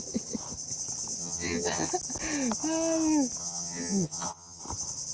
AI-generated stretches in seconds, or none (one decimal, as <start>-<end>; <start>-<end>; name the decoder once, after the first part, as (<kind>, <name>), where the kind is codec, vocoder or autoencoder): 1.2-1.9 (vocoder, HiFi-GAN); 3.4-4.6